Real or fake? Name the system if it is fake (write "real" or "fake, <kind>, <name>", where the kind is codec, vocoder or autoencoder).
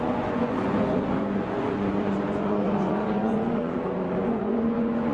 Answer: fake, vocoder, Vocos